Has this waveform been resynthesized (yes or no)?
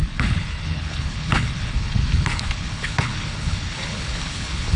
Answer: yes